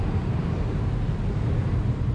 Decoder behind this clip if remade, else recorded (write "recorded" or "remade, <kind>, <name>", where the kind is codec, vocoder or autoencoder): remade, vocoder, BigVGAN v2